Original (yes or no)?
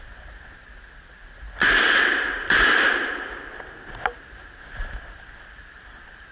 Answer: yes